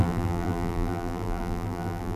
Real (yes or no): no